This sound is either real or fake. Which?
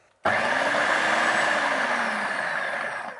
real